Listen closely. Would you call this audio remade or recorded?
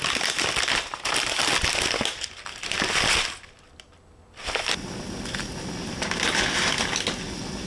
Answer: recorded